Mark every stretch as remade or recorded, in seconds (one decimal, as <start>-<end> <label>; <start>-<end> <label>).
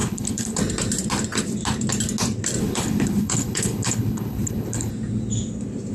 0.0-0.6 remade; 0.6-2.6 recorded; 2.6-4.9 remade; 4.9-5.9 recorded